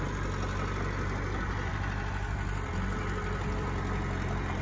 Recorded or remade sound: recorded